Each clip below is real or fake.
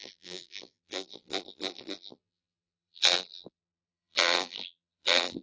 fake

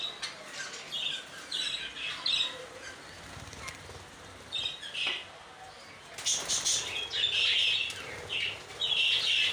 real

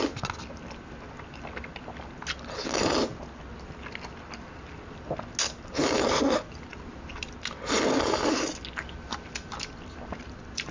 real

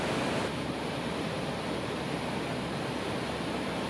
real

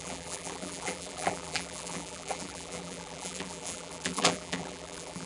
fake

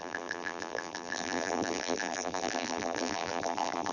fake